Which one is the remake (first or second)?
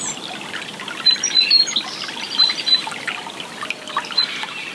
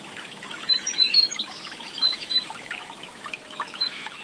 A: second